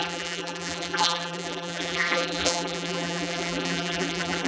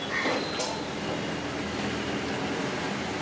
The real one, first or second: second